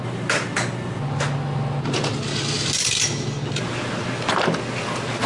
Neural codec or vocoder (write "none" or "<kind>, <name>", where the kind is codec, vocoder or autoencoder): none